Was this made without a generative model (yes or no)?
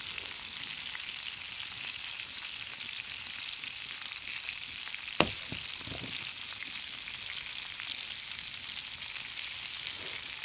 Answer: yes